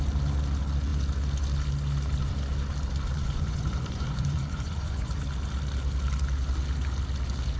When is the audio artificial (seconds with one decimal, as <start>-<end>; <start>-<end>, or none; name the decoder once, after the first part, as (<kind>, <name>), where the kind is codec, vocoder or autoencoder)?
3.1-5.1 (vocoder, Vocos)